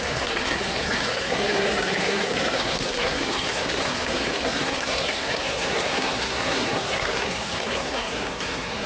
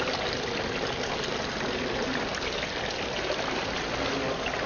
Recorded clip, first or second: second